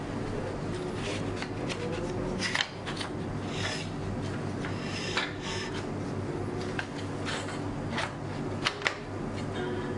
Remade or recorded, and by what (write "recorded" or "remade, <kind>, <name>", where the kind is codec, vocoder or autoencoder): recorded